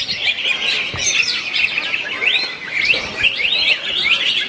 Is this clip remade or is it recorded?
recorded